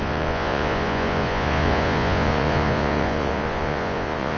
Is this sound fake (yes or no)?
yes